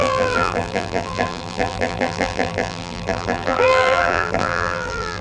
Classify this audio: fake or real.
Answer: fake